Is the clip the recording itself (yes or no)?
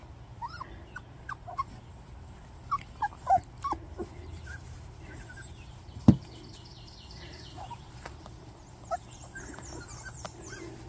yes